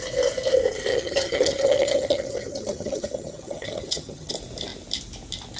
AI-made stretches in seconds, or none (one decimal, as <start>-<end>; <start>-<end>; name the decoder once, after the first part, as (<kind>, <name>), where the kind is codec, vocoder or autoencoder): 0.9-4.3 (vocoder, HiFi-GAN)